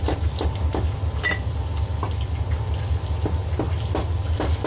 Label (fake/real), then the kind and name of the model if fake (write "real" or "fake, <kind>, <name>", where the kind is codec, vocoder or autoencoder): real